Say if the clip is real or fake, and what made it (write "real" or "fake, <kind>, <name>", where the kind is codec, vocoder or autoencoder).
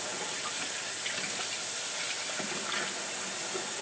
real